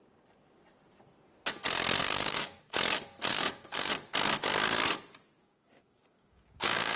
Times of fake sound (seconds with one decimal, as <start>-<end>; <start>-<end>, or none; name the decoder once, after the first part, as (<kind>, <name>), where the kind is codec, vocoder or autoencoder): 2.0-2.6 (codec, DAC); 3.3-3.9; 5.4-7.0